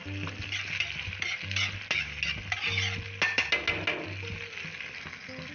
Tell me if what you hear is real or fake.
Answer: real